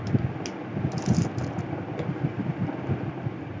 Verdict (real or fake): real